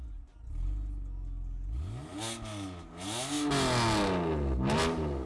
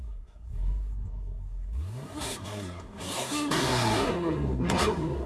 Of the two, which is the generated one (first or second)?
second